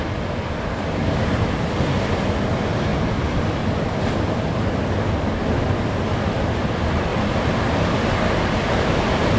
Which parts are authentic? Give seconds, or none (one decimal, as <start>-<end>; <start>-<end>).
0.0-9.4